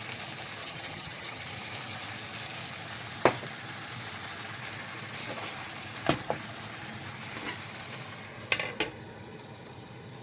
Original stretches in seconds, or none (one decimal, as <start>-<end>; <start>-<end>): 0.0-0.6; 1.4-10.2

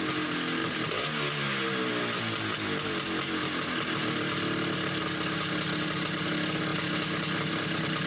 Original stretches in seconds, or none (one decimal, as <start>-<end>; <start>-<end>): 0.0-8.1

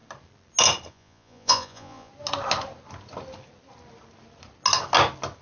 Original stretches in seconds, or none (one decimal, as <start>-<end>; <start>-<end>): 0.0-0.9; 2.1-5.4

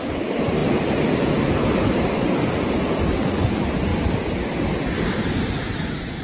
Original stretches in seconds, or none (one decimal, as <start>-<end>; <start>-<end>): 0.0-6.2